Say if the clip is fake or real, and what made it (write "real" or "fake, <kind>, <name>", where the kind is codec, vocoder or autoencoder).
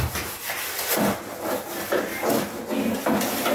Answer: real